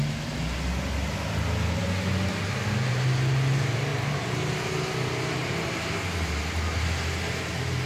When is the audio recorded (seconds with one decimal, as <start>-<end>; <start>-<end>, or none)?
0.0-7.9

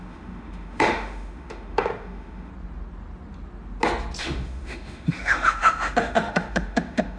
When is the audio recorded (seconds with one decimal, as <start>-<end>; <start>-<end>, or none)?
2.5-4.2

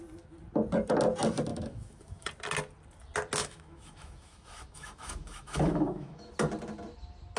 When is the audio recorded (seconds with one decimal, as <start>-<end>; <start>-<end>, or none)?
0.0-1.5; 2.3-3.4; 6.3-7.4

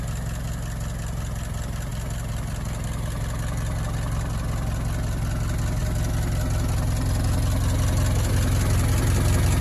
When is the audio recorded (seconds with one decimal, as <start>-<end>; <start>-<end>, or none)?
0.0-9.6

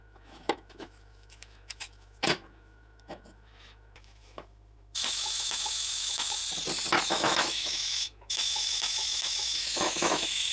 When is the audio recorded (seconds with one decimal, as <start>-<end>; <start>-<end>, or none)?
6.4-7.0

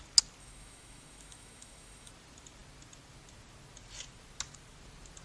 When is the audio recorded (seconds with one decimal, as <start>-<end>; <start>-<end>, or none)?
0.0-0.4; 2.1-5.2